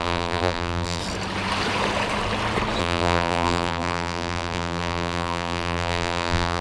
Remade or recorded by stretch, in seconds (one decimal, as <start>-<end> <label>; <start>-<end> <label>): 0.0-1.0 remade; 1.0-2.8 recorded; 2.8-6.6 remade